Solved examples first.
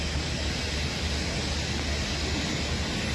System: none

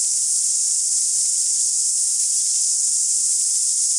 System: none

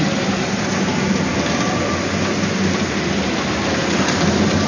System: none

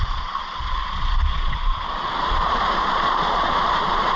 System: vocoder, Vocos